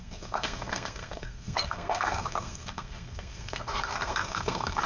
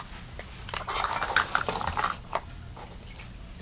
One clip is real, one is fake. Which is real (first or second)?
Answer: second